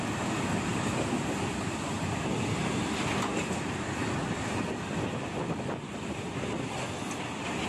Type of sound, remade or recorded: remade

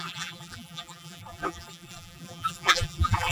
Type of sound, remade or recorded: remade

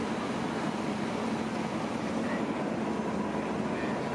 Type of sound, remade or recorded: recorded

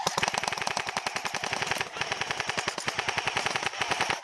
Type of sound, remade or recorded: recorded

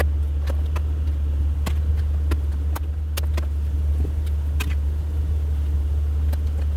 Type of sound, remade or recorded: recorded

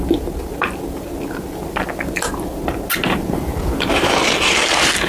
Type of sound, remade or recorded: recorded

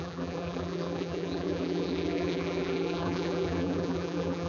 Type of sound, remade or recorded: remade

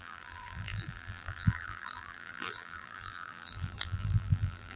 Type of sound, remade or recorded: remade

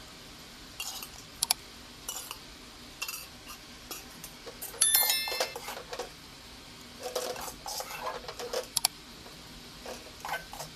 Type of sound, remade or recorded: remade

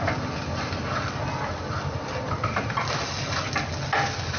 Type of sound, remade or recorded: recorded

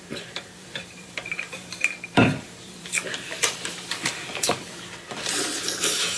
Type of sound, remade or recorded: remade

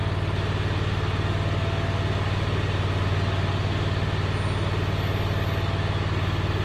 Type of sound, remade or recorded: recorded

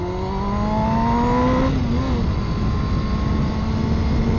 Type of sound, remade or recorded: recorded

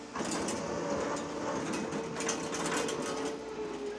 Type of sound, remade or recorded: recorded